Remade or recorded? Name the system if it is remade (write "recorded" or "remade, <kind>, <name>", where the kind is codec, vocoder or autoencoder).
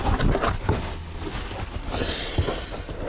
recorded